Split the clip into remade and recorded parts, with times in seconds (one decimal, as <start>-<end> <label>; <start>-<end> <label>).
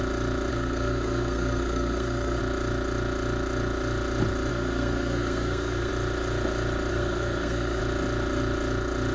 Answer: 0.0-0.5 recorded; 0.5-2.4 remade; 2.4-4.5 recorded; 4.5-5.9 remade; 5.9-6.9 recorded; 6.9-7.8 remade; 7.8-9.1 recorded